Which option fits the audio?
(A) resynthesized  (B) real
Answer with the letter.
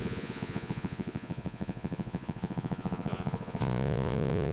A